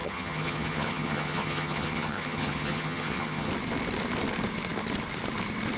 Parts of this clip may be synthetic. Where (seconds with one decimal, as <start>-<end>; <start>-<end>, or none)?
0.0-3.5